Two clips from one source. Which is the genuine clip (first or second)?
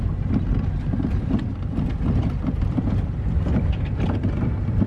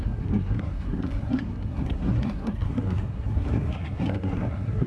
first